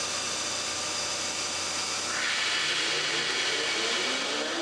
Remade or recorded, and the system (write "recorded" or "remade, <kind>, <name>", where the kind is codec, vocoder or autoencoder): recorded